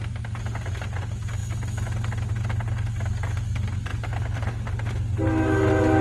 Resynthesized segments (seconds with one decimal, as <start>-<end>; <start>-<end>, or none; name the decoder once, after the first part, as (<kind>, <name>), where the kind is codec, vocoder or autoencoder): none